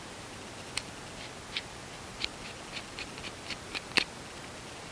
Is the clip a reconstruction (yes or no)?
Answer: no